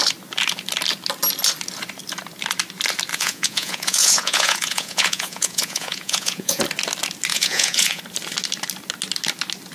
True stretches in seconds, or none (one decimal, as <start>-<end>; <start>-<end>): 0.0-3.1; 6.6-7.3; 8.0-9.7